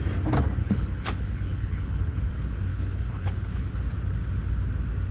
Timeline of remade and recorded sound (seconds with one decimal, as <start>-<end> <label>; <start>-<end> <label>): 0.0-0.6 recorded; 0.6-2.2 remade; 2.2-2.7 recorded; 2.7-3.7 remade; 3.7-5.1 recorded